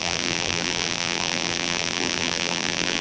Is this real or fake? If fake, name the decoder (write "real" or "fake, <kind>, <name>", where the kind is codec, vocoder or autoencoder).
fake, vocoder, BigVGAN v2